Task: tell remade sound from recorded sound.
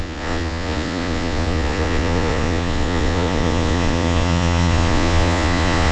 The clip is remade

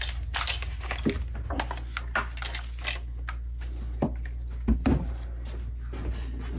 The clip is recorded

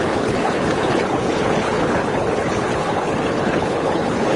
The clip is remade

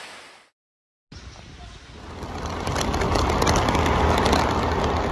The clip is recorded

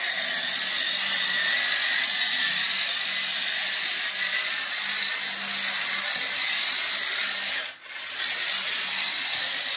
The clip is recorded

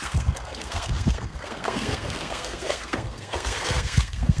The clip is remade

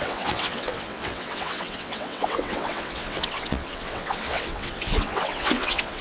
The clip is remade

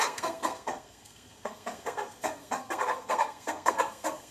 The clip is remade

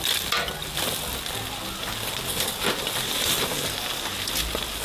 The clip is recorded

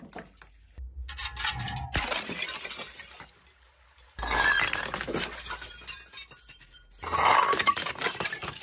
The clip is recorded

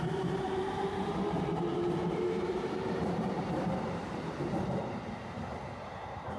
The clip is remade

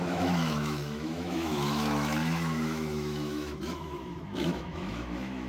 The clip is remade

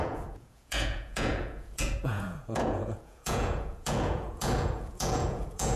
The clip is remade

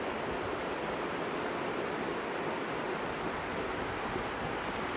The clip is recorded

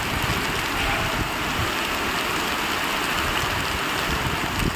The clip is recorded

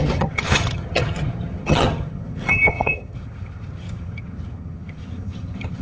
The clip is remade